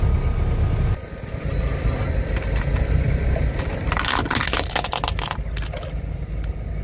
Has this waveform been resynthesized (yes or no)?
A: no